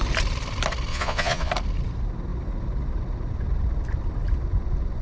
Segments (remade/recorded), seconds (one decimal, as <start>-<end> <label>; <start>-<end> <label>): 0.0-0.9 recorded; 0.9-1.5 remade; 1.5-5.0 recorded